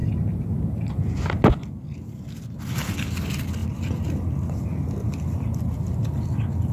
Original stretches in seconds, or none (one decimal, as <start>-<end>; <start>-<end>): 0.0-3.6; 4.3-6.7